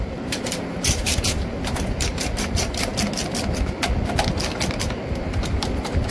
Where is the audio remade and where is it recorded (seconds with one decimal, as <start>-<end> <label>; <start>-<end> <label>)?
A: 0.0-2.9 remade; 2.9-5.1 recorded; 5.1-6.1 remade